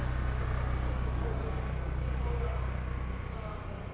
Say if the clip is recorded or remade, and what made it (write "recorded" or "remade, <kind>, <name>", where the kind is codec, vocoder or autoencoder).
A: recorded